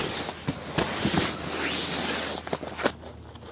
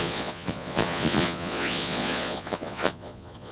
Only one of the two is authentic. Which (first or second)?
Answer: first